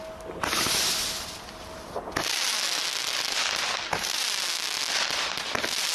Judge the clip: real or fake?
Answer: real